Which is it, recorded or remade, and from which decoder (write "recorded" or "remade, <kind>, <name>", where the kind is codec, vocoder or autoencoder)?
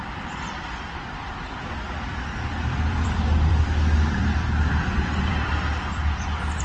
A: remade, vocoder, BigVGAN v2